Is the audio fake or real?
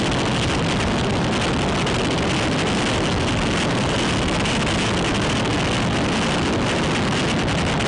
real